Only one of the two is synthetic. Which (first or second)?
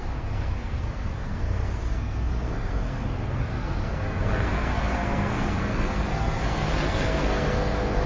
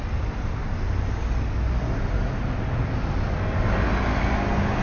first